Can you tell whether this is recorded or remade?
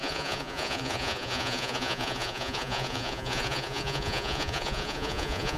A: remade